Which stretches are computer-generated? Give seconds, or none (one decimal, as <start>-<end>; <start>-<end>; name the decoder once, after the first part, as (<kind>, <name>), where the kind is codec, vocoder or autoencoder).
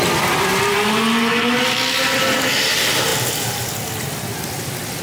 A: 0.0-0.5 (vocoder, BigVGAN v2); 1.6-5.0